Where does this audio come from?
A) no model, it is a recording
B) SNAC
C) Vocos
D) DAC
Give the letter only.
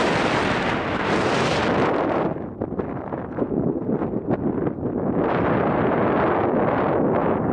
A